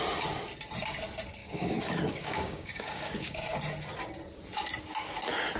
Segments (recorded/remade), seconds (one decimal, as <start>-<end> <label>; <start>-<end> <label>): 0.0-1.4 recorded; 1.4-3.5 remade; 3.5-5.6 recorded